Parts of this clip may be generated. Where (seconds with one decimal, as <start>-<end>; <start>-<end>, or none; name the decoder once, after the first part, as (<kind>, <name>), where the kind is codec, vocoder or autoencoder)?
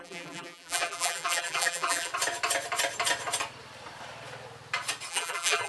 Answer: 0.0-2.1 (vocoder, BigVGAN v2); 5.1-5.7